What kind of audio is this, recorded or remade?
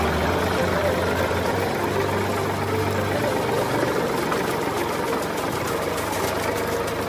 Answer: recorded